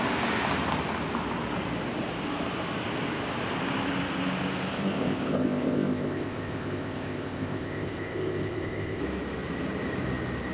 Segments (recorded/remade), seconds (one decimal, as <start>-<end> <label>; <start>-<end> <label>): 0.0-4.7 recorded; 4.7-9.0 remade; 9.0-10.5 recorded

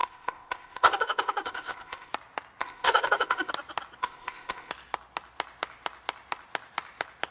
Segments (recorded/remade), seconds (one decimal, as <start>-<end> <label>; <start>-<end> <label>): 0.0-2.1 remade; 2.1-2.6 recorded; 2.6-3.5 remade; 3.5-4.0 recorded; 4.0-4.7 remade; 4.7-7.3 recorded

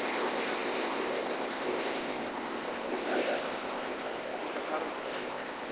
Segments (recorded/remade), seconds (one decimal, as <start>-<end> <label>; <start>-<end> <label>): 0.0-4.4 remade; 4.4-5.0 recorded; 5.0-5.7 remade

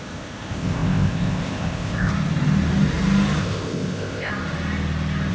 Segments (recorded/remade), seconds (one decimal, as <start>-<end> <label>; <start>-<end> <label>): 0.0-2.1 remade; 2.1-3.4 recorded; 3.4-4.3 remade; 4.3-5.3 recorded

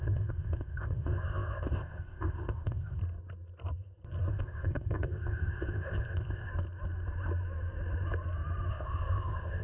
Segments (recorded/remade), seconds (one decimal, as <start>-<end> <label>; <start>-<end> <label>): 0.0-3.0 remade; 3.0-4.3 recorded; 4.3-6.5 remade; 6.5-8.7 recorded; 8.7-9.6 remade

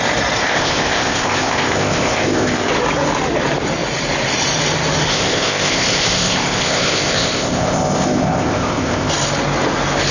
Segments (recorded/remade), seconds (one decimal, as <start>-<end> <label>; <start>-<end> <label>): 0.0-0.4 recorded; 0.4-2.7 remade; 2.7-5.1 recorded; 5.1-9.1 remade; 9.1-10.1 recorded